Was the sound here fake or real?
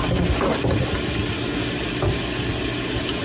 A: real